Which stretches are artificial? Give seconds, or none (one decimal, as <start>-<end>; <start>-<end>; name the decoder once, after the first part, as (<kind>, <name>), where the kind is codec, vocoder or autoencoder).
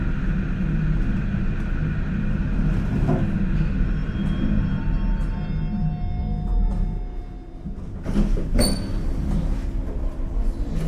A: none